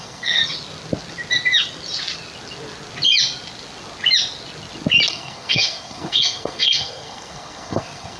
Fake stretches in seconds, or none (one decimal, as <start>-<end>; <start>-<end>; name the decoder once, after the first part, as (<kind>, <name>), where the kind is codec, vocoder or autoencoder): 0.0-0.4 (codec, SNAC); 5.1-8.2